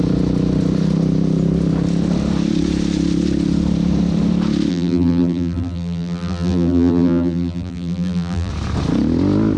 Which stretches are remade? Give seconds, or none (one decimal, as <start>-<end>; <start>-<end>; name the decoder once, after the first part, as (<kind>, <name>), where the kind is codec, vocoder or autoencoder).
4.7-8.5 (vocoder, BigVGAN v2)